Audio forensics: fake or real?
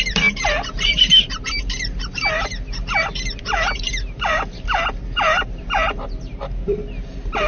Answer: fake